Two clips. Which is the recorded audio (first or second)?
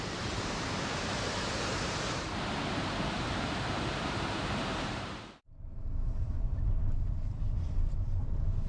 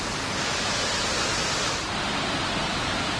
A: second